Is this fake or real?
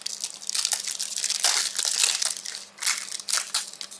real